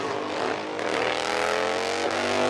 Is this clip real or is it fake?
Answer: real